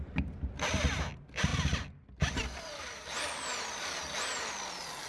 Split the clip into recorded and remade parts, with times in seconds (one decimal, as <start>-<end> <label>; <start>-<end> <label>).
0.0-5.1 remade